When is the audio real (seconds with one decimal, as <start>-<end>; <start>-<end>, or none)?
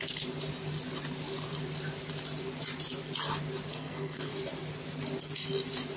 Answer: 0.0-3.7; 4.3-6.0